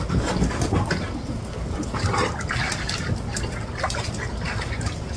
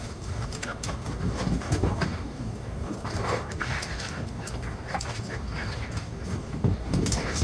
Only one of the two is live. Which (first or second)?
first